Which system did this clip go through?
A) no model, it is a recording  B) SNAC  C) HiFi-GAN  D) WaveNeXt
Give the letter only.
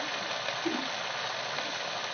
A